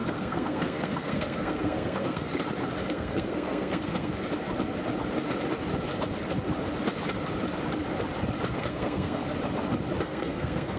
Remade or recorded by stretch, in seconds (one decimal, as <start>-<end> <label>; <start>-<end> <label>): 0.0-2.3 remade; 2.3-2.9 recorded; 2.9-4.1 remade; 4.1-8.5 recorded; 8.5-9.2 remade; 9.2-10.0 recorded; 10.0-10.8 remade